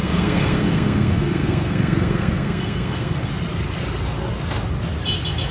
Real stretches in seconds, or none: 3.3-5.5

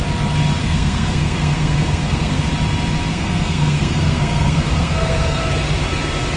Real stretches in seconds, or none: 0.0-0.6; 2.5-3.1; 5.4-6.4

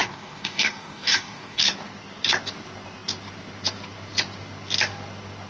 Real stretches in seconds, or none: 1.6-5.5

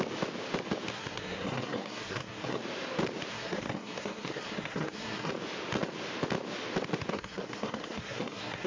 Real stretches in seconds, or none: 0.0-0.9; 2.6-3.3; 5.3-7.1

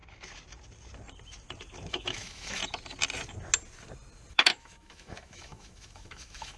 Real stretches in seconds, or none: 0.0-1.9; 2.6-4.3

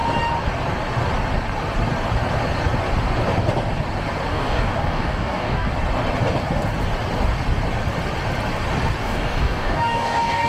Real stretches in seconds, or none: 0.0-4.3; 5.7-9.0

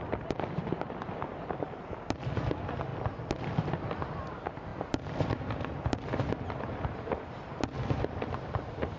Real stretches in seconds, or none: 0.0-9.0

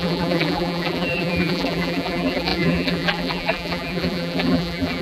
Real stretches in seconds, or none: none